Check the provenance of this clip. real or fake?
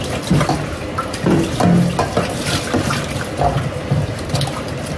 real